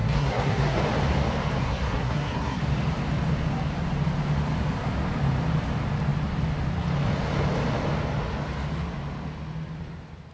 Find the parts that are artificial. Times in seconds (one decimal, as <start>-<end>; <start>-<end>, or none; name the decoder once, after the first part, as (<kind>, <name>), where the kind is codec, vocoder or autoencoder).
0.0-0.8 (codec, SNAC); 1.6-2.6